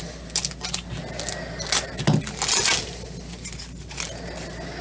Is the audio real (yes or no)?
yes